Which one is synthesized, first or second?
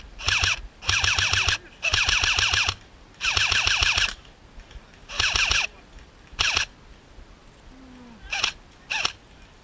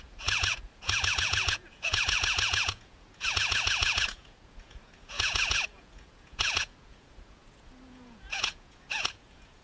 second